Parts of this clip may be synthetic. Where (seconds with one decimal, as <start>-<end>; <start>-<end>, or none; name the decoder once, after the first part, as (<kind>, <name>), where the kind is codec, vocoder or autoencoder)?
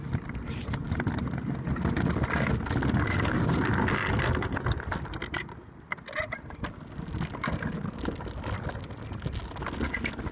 none